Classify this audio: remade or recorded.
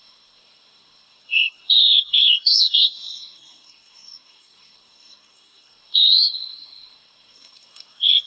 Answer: remade